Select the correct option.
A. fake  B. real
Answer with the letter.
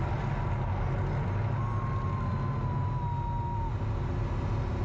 B